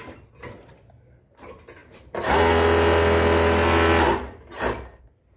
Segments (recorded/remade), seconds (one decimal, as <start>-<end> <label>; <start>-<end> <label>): 0.0-5.4 recorded